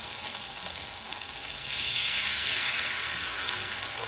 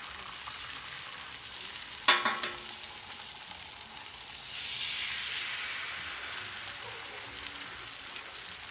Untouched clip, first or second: second